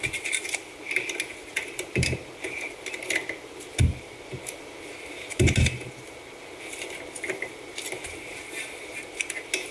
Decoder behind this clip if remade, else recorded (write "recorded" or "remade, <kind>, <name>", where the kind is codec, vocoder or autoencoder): recorded